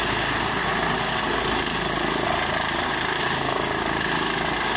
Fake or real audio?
real